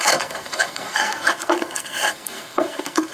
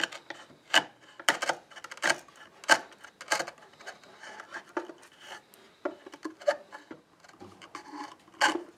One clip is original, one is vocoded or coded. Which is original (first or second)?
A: second